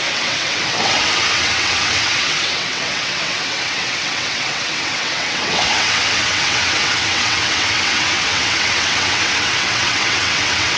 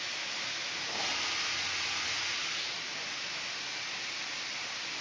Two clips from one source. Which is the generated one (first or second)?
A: first